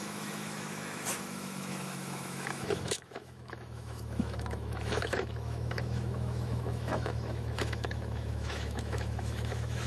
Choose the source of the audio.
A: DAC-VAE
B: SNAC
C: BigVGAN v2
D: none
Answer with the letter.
A